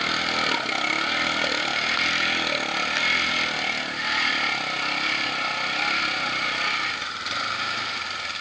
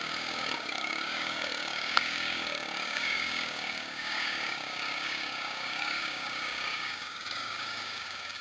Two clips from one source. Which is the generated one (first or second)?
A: second